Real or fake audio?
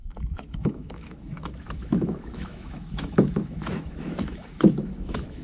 fake